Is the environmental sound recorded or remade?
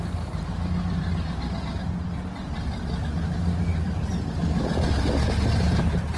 recorded